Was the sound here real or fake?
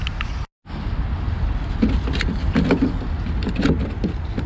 real